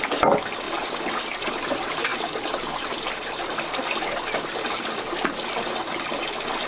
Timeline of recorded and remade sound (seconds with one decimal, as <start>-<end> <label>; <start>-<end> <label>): 0.0-6.7 recorded